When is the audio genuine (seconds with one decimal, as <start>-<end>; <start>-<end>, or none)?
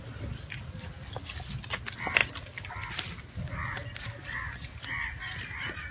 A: 0.0-5.9